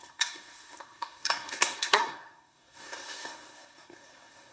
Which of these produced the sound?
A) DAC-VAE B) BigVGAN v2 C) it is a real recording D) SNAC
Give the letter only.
D